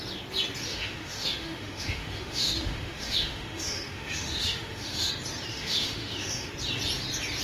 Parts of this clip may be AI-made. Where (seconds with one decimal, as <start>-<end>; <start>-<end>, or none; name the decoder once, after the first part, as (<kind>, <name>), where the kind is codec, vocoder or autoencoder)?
0.7-5.1 (autoencoder, DAC-VAE); 5.5-6.5